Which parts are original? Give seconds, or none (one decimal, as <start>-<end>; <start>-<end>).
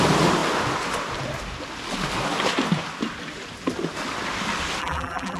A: 0.0-4.8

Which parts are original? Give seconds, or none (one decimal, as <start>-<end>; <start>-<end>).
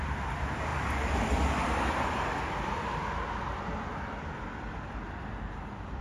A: 0.0-6.0